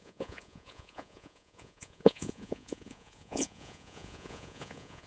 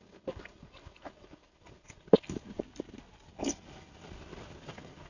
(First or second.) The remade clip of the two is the first